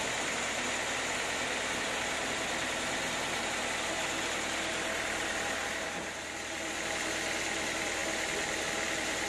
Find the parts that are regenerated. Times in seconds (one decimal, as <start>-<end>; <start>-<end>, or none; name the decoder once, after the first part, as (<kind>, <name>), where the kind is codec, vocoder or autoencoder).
none